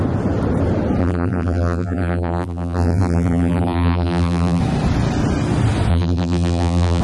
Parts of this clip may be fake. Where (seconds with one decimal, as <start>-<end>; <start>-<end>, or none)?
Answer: 1.0-4.6; 5.9-7.0